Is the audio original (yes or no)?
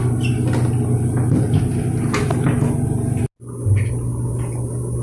yes